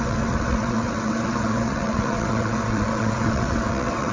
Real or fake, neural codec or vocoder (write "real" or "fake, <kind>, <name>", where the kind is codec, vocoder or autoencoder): fake, vocoder, WaveNeXt